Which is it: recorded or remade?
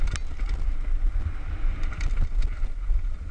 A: recorded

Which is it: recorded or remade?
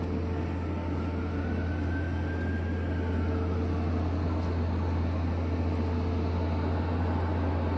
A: recorded